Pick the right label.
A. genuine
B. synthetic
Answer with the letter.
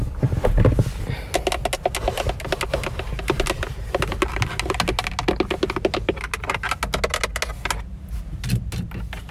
A